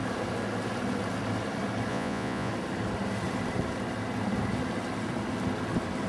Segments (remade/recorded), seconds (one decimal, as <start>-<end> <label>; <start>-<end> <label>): 0.0-1.9 recorded; 1.9-2.5 remade; 2.5-6.1 recorded